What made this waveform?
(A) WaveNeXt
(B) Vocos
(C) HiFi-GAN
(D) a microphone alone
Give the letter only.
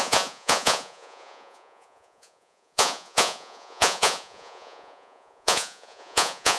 B